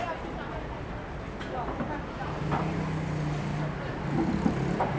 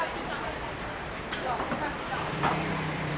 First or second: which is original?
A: first